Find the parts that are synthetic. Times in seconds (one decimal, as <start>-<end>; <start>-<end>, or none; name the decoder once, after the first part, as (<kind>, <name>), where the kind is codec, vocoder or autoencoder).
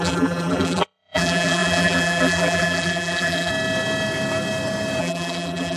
0.0-3.5 (vocoder, BigVGAN v2); 5.0-5.8